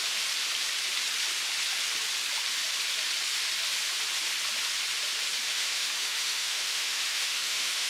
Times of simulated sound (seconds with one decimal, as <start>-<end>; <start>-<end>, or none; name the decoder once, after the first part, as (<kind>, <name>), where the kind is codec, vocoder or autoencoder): 5.4-7.9 (autoencoder, DAC-VAE)